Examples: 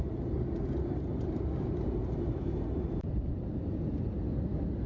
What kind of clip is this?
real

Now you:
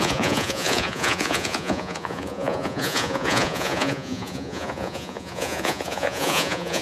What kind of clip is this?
fake